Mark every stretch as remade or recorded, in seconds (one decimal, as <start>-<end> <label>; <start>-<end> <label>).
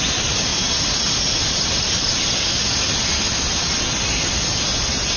0.0-5.2 recorded